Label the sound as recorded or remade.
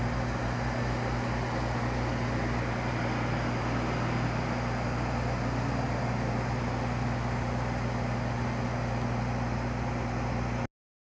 recorded